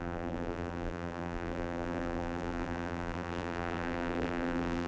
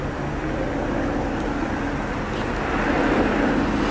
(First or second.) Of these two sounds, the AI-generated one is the first